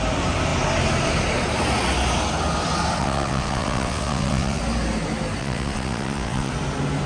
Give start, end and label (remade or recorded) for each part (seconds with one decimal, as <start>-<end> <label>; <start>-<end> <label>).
0.0-3.0 recorded; 3.0-4.6 remade; 4.6-5.4 recorded; 5.4-6.5 remade; 6.5-7.1 recorded